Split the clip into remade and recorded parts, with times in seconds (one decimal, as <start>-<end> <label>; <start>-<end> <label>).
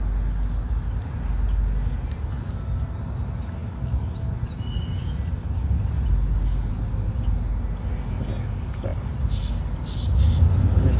0.0-11.0 recorded